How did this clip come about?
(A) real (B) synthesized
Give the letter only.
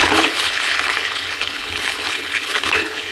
B